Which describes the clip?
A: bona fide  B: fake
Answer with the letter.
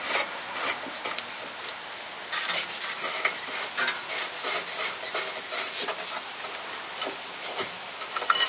A